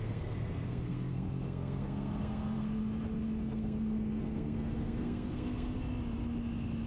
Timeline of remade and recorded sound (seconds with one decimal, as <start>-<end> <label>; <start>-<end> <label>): 0.0-2.8 remade; 2.8-3.4 recorded; 3.4-5.8 remade; 5.8-6.9 recorded